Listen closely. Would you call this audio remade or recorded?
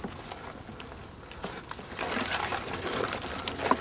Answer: recorded